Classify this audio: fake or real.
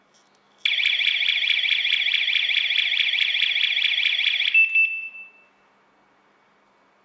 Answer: real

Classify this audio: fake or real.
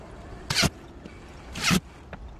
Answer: real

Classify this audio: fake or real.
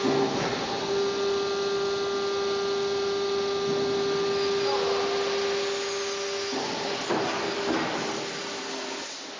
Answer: real